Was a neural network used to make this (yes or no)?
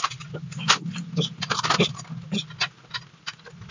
no